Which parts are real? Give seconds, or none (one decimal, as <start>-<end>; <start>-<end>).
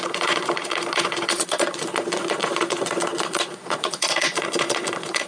none